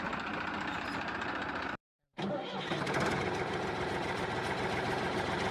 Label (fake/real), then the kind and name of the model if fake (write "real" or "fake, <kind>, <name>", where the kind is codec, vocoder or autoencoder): fake, vocoder, BigVGAN v2